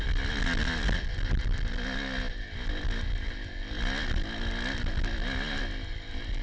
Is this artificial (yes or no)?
no